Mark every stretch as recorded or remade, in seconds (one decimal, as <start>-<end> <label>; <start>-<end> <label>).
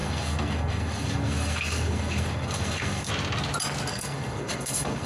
0.0-3.1 remade; 3.1-3.9 recorded; 3.9-5.1 remade